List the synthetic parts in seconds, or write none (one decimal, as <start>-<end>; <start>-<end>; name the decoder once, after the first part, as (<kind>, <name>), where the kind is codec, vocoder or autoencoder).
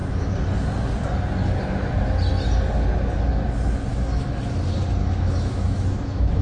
3.9-4.5 (autoencoder, DAC-VAE); 5.0-6.4